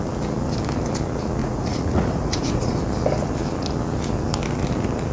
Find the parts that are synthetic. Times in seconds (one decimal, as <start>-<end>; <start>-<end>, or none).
1.4-2.8